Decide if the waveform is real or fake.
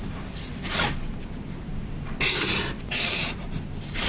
real